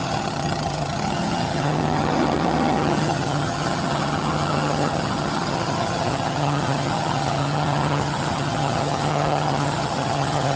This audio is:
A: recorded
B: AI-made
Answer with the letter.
B